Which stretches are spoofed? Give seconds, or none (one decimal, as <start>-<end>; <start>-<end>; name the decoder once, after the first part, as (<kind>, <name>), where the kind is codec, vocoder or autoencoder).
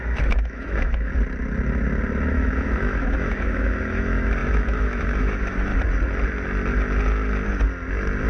0.0-1.1 (autoencoder, DAC-VAE); 2.3-5.7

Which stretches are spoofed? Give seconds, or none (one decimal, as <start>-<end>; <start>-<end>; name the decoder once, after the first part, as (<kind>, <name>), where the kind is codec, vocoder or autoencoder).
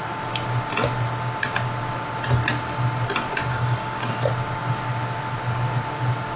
3.5-4.1 (codec, DAC)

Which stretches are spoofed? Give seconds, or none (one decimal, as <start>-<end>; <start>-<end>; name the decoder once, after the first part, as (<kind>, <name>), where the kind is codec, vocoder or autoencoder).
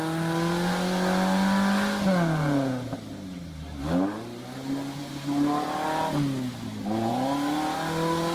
none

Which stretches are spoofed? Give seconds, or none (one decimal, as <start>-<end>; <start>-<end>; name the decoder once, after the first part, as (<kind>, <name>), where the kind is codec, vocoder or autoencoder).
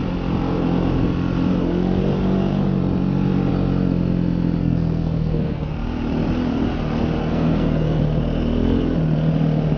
4.6-5.7 (codec, SNAC); 7.2-8.0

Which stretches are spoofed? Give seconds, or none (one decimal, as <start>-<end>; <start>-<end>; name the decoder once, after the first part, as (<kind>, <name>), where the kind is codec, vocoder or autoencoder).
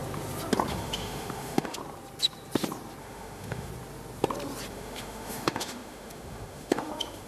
0.7-1.8 (autoencoder, DAC-VAE); 3.0-3.7; 4.7-7.3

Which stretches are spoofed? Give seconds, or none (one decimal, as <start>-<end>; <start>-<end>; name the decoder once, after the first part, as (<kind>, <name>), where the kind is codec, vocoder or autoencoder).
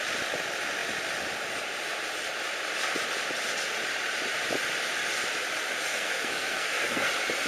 5.9-7.1 (codec, SNAC)